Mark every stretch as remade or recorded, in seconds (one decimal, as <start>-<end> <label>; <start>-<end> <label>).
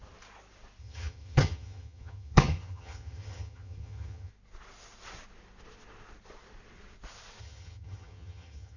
0.0-0.8 recorded; 0.8-4.3 remade; 4.3-7.4 recorded; 7.4-8.8 remade